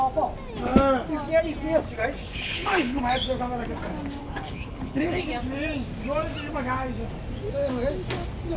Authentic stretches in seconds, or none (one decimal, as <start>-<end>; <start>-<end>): 0.0-2.2; 3.0-4.2; 5.2-8.6